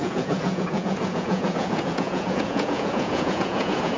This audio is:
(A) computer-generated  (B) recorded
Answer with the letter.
A